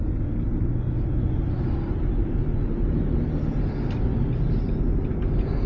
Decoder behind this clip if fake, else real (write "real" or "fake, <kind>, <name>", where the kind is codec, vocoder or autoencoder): real